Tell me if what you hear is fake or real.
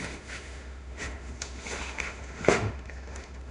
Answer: fake